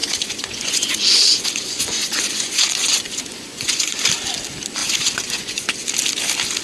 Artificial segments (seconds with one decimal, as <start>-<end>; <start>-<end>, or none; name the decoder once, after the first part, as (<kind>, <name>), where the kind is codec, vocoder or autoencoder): 0.0-4.0 (vocoder, Vocos); 4.8-5.6